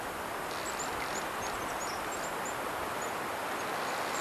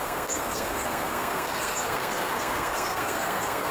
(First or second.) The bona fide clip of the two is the first